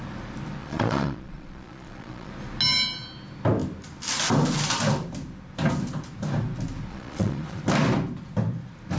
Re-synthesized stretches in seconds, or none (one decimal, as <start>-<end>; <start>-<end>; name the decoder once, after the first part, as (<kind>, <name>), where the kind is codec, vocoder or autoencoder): 0.6-2.3 (vocoder, Vocos); 6.9-7.6